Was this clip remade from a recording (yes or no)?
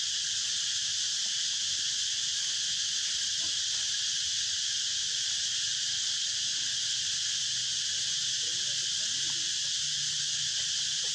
no